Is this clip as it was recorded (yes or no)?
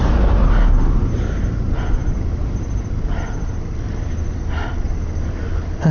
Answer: yes